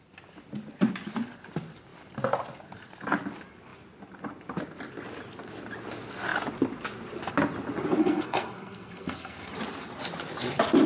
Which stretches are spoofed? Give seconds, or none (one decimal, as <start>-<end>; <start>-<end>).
8.0-9.5